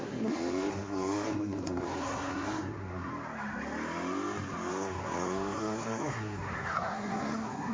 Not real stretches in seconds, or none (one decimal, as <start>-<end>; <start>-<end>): 0.0-3.1; 4.7-7.7